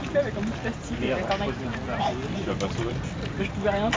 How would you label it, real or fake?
real